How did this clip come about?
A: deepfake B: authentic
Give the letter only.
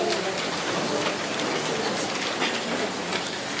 B